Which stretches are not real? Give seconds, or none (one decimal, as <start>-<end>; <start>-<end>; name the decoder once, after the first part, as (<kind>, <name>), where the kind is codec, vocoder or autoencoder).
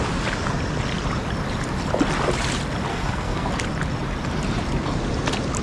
2.9-3.5 (codec, SNAC)